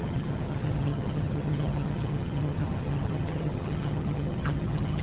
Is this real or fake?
fake